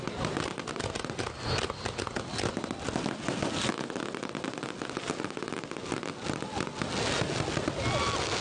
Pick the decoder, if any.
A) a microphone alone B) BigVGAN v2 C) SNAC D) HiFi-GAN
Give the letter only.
A